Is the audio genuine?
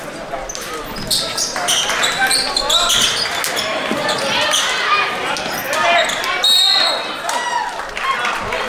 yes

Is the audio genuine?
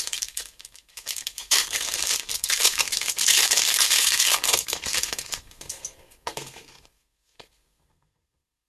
no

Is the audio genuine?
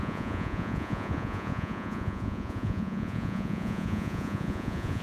no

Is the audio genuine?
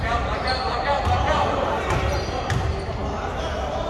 yes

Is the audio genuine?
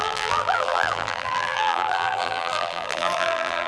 no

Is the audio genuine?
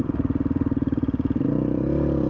no